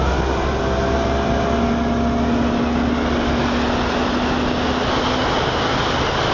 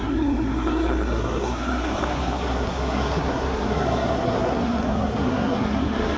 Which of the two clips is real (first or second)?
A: first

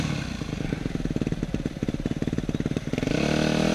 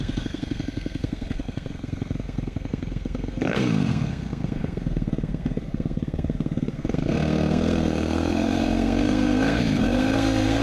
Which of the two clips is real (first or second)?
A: first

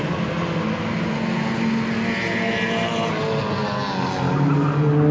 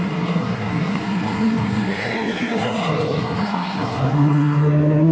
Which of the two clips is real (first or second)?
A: first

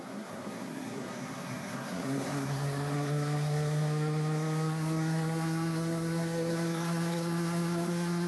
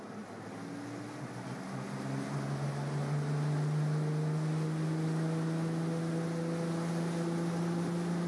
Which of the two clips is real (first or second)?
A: second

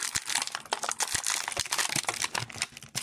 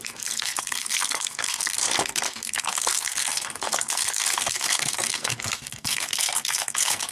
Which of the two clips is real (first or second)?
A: first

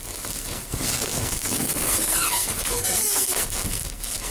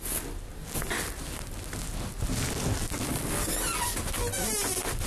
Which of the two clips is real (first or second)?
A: second